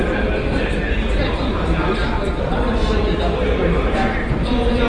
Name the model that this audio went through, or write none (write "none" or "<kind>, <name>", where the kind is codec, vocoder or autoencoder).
none